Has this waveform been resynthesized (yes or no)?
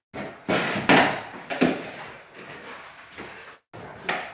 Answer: no